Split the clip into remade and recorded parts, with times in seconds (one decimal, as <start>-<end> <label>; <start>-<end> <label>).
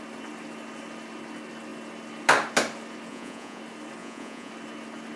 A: 0.0-3.1 recorded; 3.1-3.6 remade; 3.6-4.0 recorded; 4.0-4.5 remade; 4.5-5.2 recorded